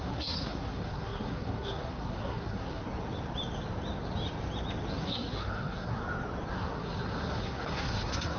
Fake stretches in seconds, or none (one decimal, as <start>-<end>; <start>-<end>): 0.0-2.8; 4.9-6.0; 6.5-8.4

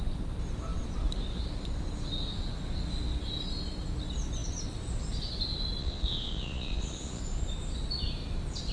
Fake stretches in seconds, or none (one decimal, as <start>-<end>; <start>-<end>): 5.8-7.2

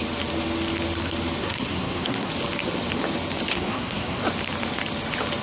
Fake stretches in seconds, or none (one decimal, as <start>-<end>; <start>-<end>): 1.4-2.3; 3.5-4.2

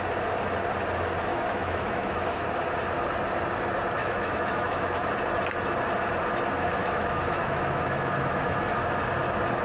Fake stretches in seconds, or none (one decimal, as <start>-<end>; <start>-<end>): 1.3-2.4; 4.0-5.1; 6.8-8.6

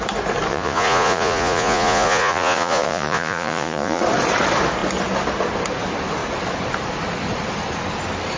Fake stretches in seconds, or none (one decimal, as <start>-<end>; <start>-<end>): 0.5-4.0

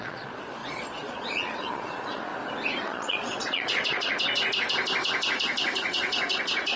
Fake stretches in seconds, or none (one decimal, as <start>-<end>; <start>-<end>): 0.0-2.3; 2.8-4.1; 5.9-6.8

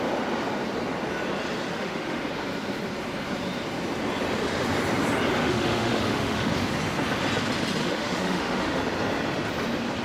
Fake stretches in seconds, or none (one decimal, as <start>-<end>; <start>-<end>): 1.7-2.2; 5.4-6.5; 7.8-8.8